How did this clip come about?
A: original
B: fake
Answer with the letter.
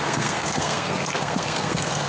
B